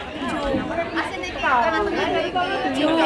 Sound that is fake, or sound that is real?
real